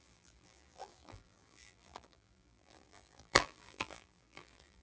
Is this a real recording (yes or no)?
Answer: no